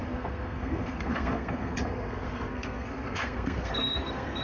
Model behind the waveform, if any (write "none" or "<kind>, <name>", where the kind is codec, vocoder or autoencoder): codec, SNAC